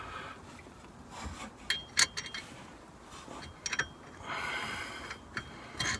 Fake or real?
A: real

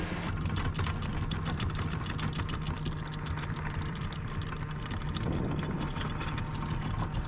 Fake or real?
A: real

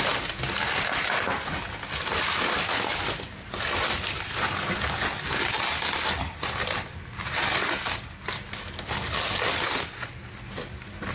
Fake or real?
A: real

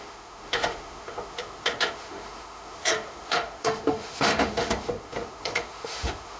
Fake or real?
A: fake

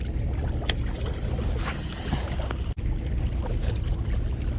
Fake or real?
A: real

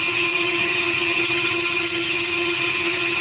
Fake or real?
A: fake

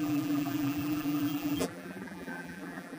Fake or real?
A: fake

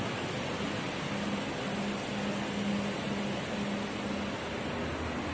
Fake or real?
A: real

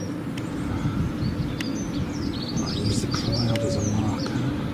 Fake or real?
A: real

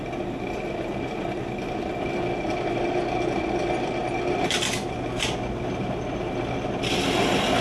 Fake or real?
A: real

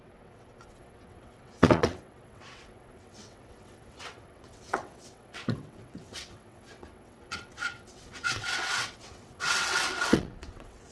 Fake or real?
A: fake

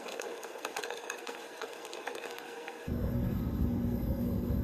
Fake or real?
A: fake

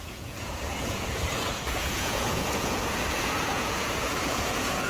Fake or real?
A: fake